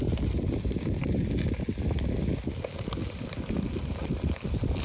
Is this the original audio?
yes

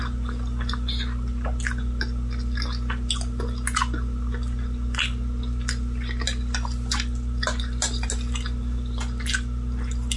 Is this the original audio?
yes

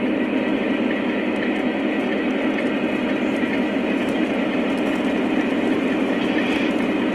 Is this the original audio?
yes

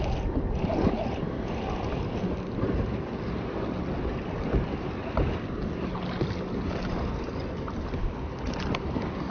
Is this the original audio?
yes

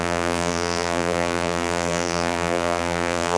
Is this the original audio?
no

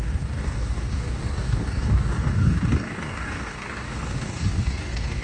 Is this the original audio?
no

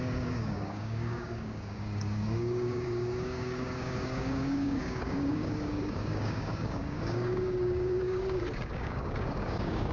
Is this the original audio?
no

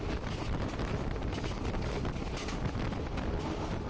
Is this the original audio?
yes